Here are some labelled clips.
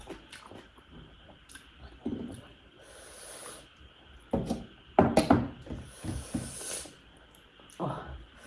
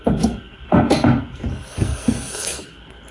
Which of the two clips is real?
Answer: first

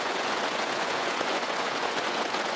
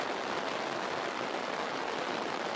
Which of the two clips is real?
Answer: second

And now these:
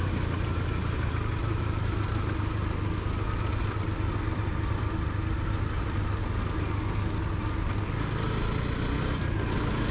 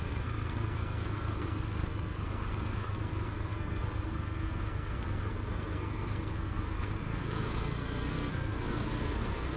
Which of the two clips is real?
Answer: first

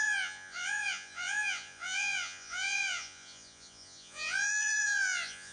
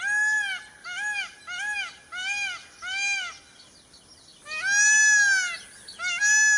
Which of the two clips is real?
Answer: second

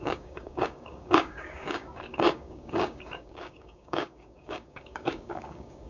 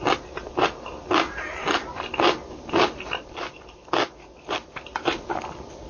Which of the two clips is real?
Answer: second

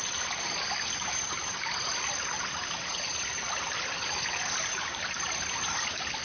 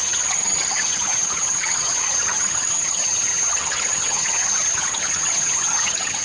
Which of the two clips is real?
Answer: first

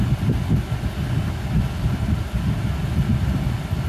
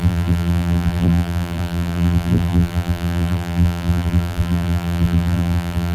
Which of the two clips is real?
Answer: first